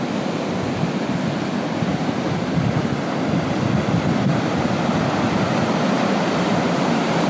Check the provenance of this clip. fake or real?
real